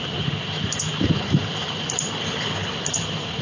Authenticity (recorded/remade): remade